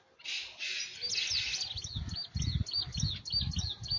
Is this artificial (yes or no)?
no